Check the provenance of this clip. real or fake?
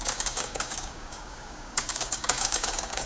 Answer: fake